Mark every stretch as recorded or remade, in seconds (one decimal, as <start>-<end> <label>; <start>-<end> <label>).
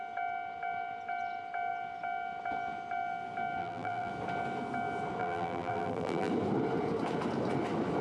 0.0-3.6 recorded; 3.6-4.1 remade; 4.1-5.2 recorded; 5.2-6.3 remade; 6.3-8.0 recorded